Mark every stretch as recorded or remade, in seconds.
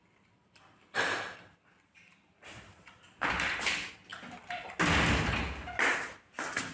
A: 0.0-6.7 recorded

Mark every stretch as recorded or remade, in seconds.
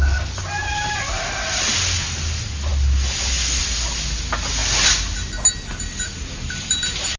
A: 0.0-7.2 recorded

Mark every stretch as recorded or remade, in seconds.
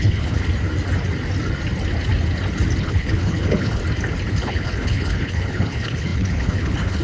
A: 0.0-0.4 remade; 0.4-2.8 recorded; 2.8-3.8 remade; 3.8-4.4 recorded; 4.4-7.0 remade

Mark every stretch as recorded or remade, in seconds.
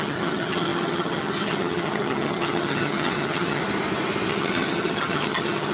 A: 0.0-3.6 remade; 3.6-4.3 recorded; 4.3-5.7 remade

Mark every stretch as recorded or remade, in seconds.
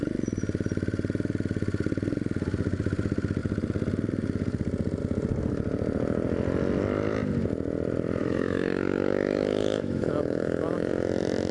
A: 0.0-8.2 recorded; 8.2-10.9 remade; 10.9-11.5 recorded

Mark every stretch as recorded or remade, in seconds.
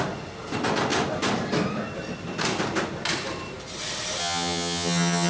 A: 0.0-4.2 recorded; 4.2-5.3 remade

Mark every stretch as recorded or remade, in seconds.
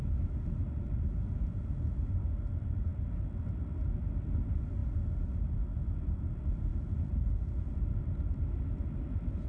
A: 0.0-9.5 recorded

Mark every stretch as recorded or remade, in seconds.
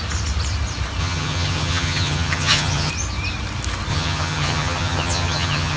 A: 0.0-1.0 recorded; 1.0-2.9 remade; 2.9-3.9 recorded; 3.9-5.8 remade